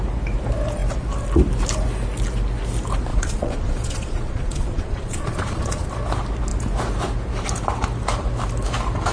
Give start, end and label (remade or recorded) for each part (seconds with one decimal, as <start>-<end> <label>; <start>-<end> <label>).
0.0-3.1 recorded; 3.1-5.9 remade; 5.9-9.1 recorded

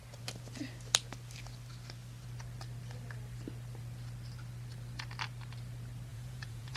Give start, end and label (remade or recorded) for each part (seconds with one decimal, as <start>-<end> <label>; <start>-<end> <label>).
0.0-6.1 recorded; 6.1-6.8 remade

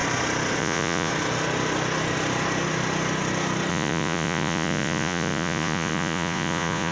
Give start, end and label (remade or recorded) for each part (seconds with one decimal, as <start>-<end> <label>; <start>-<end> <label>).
0.0-0.6 recorded; 0.6-1.1 remade; 1.1-3.7 recorded; 3.7-6.9 remade

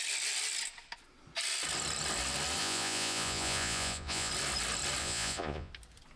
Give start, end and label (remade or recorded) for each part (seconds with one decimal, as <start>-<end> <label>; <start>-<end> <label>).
0.0-2.6 recorded; 2.6-4.3 remade; 4.3-5.0 recorded; 5.0-5.7 remade; 5.7-6.2 recorded

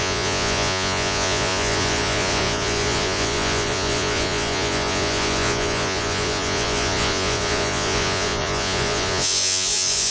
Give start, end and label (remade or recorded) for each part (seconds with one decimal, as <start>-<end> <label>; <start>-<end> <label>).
0.0-10.1 remade

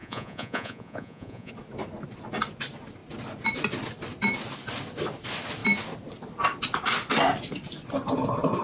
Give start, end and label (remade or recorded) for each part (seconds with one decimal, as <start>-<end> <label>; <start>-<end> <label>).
0.0-1.5 remade; 1.5-8.6 recorded

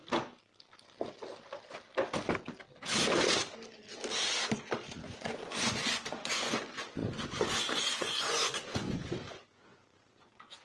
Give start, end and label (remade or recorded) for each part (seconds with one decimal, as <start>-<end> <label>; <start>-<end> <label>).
0.0-5.0 recorded; 5.0-10.6 remade

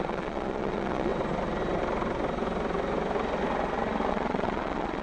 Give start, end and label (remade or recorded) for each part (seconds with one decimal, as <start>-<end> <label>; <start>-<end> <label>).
0.0-1.1 remade; 1.1-4.1 recorded; 4.1-5.0 remade